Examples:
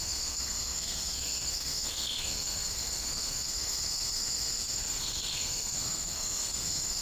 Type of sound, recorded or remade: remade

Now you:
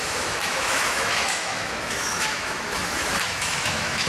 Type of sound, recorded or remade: remade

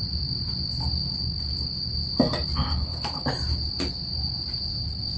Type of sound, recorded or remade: recorded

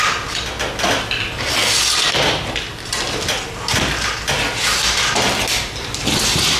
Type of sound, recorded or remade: recorded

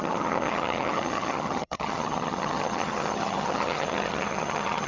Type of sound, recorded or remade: remade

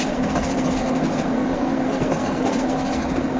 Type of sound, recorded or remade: remade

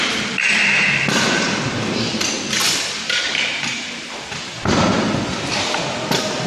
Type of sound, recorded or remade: recorded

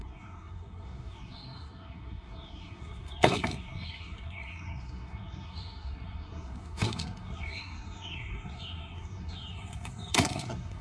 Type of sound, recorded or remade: remade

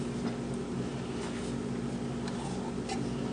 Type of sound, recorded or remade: recorded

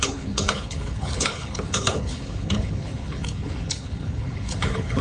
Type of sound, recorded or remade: remade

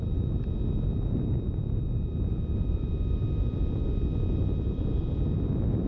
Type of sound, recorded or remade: recorded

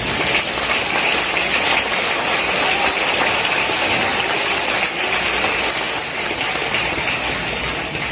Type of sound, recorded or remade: recorded